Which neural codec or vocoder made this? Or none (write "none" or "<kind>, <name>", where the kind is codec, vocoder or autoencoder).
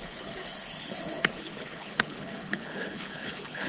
codec, HILCodec